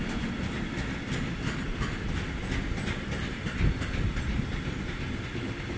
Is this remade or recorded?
recorded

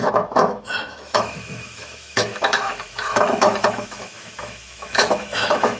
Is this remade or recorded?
remade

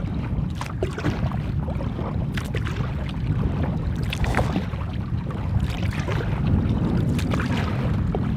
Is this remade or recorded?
recorded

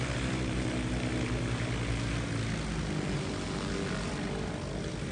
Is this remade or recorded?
recorded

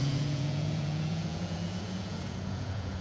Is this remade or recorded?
remade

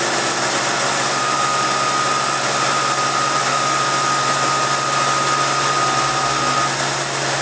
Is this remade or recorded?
recorded